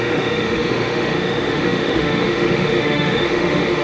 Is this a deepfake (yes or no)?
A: yes